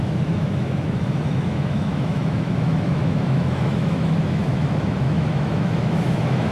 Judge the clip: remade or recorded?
remade